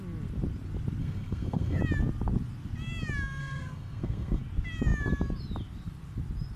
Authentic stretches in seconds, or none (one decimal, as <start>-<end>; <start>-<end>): 0.0-1.0; 1.8-3.4; 4.4-6.6